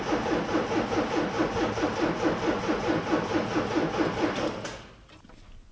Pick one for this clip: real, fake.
real